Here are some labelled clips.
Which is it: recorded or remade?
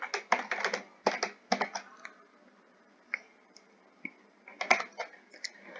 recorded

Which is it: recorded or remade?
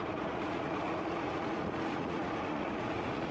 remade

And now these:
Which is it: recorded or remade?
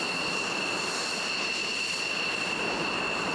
recorded